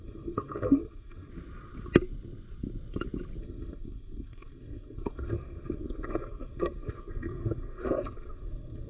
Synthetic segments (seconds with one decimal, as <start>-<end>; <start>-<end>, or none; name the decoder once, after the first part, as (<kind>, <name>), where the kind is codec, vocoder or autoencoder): 0.0-1.3 (codec, SNAC); 3.4-8.9

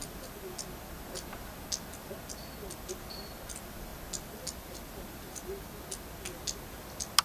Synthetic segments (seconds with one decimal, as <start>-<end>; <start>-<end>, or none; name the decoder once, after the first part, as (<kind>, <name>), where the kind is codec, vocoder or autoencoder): none

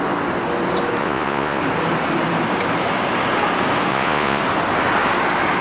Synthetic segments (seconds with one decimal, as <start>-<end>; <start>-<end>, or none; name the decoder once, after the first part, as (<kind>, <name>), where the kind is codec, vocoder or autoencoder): 1.0-1.6 (vocoder, Vocos); 3.9-4.4

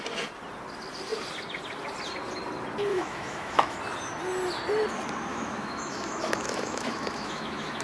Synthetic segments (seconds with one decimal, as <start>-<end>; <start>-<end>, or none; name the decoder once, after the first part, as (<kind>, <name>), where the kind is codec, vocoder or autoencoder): 2.9-3.8 (autoencoder, DAC-VAE); 5.3-7.8

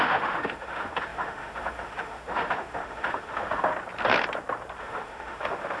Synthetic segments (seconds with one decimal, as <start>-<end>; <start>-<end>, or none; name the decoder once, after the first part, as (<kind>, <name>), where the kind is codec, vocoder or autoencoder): 0.0-3.7 (autoencoder, DAC-VAE); 4.8-5.8

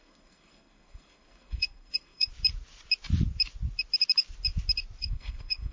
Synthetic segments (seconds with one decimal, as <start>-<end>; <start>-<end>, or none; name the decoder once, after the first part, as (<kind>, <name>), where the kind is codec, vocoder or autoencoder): 0.0-2.3 (codec, SNAC); 5.0-5.7

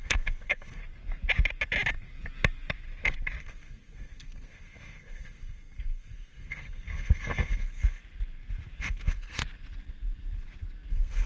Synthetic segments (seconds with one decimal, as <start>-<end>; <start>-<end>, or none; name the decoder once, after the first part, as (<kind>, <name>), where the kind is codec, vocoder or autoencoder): 0.0-0.8 (codec, SNAC); 3.4-8.0; 8.8-9.4; 10.9-11.3

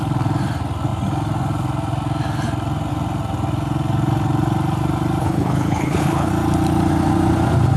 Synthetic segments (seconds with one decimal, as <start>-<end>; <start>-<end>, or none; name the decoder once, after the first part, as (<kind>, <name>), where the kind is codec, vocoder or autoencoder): 5.2-6.3 (codec, HILCodec)